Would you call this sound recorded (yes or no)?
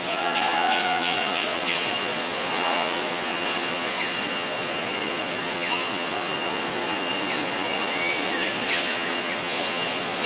no